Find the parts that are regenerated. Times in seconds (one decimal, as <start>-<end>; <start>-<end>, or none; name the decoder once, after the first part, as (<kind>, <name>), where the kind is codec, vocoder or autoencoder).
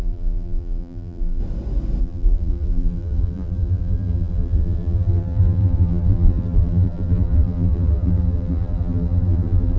0.0-1.4 (vocoder, BigVGAN v2); 2.0-9.8